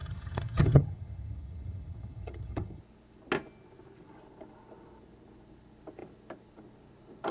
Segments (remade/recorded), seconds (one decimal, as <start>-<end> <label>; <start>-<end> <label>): 0.0-2.8 remade; 2.8-7.3 recorded